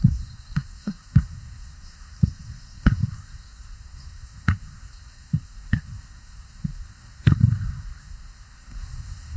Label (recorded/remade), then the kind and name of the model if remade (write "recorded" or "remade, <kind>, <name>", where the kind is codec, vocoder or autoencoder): remade, codec, SNAC